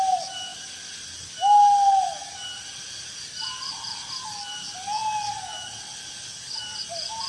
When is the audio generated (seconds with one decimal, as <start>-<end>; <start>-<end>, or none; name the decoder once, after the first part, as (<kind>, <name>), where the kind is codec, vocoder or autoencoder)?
none